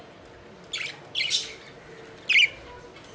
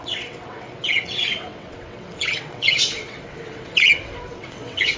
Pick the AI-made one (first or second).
second